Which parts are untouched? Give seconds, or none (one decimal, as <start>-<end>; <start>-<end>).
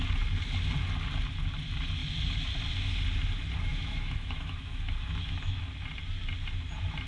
0.0-3.7; 5.6-7.1